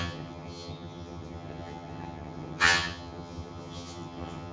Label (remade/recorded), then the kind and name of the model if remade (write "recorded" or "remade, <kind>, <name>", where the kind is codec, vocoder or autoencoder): remade, vocoder, HiFi-GAN